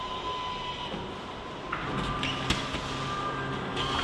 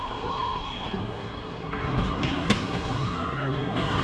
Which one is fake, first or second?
second